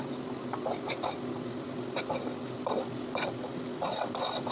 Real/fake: real